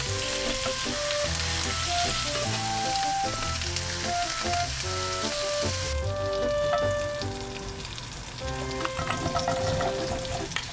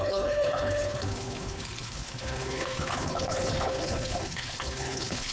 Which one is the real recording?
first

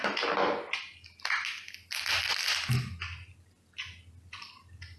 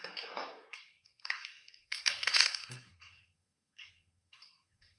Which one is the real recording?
first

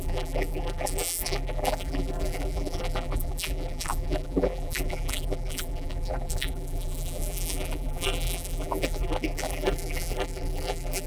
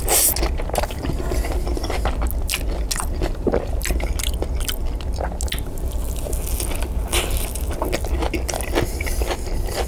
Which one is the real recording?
second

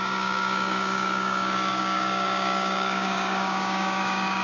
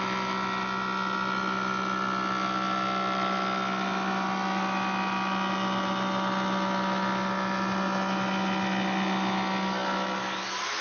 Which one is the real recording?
second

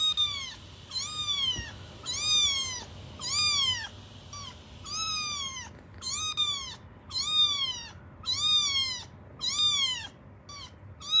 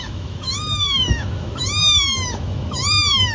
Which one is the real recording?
first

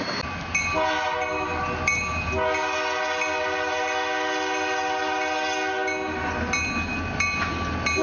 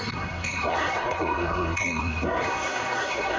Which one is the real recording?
first